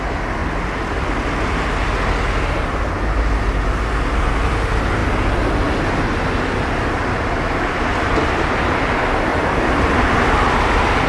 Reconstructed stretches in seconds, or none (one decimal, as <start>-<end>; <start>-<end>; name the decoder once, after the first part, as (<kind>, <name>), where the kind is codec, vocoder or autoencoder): 0.4-1.5 (vocoder, BigVGAN v2); 9.3-10.0